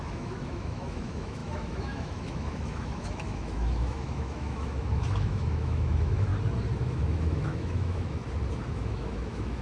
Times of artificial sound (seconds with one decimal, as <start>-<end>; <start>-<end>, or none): 0.0-6.3; 6.8-8.2; 8.7-9.6